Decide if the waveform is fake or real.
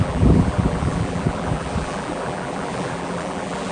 fake